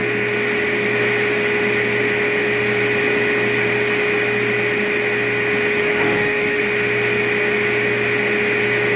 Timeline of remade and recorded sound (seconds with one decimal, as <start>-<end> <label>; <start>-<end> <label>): 0.0-5.8 recorded; 5.8-6.6 remade; 6.6-9.0 recorded